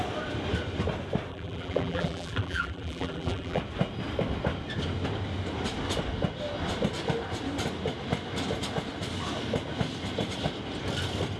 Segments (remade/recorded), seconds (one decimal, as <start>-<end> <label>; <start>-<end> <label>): 0.0-1.3 recorded; 1.3-3.6 remade; 3.6-11.4 recorded